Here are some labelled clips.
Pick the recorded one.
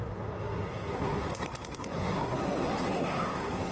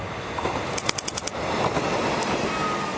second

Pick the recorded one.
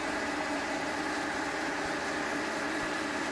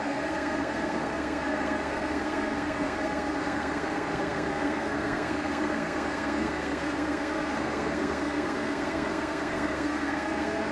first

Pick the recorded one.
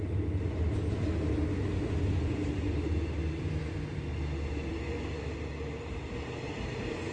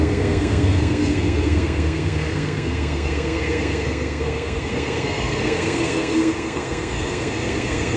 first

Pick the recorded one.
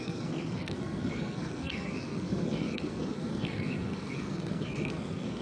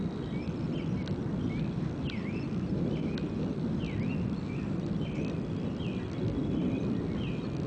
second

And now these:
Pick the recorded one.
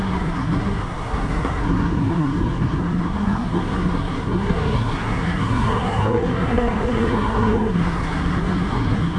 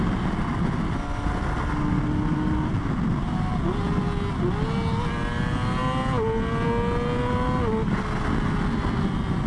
second